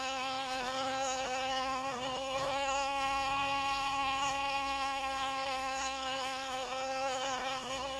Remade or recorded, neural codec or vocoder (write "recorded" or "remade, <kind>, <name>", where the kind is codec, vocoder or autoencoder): remade, codec, SNAC